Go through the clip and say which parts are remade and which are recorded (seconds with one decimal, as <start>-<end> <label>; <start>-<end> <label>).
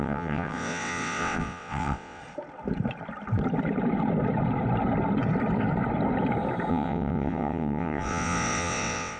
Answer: 0.0-2.2 remade; 2.2-6.7 recorded; 6.7-9.2 remade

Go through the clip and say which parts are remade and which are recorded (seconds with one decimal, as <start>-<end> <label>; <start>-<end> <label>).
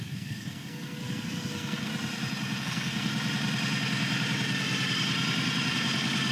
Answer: 0.0-1.9 remade; 1.9-2.6 recorded; 2.6-3.1 remade; 3.1-6.3 recorded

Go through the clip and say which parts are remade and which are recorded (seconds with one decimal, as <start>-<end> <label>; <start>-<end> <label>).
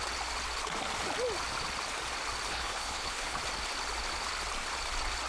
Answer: 0.0-2.5 recorded; 2.5-3.4 remade; 3.4-5.3 recorded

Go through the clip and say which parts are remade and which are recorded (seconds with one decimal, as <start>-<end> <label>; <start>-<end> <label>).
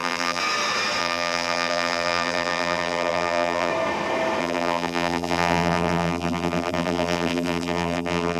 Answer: 0.0-0.4 remade; 0.4-1.0 recorded; 1.0-3.7 remade; 3.7-4.4 recorded; 4.4-8.4 remade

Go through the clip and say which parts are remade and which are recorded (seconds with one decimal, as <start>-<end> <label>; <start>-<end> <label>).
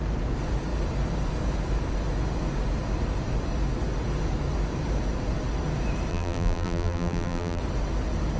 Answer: 0.0-6.1 recorded; 6.1-7.6 remade; 7.6-8.4 recorded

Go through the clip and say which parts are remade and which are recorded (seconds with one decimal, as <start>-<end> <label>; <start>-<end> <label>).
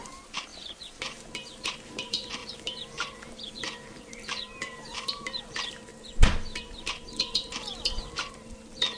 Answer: 0.0-5.9 remade; 5.9-6.6 recorded; 6.6-9.0 remade